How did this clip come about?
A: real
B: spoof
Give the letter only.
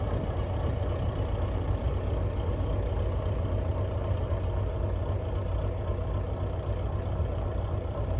A